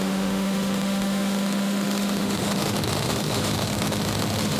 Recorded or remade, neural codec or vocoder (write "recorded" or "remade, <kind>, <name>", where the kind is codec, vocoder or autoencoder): remade, autoencoder, DAC-VAE